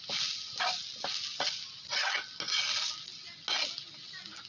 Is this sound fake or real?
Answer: real